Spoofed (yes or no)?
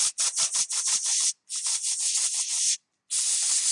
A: no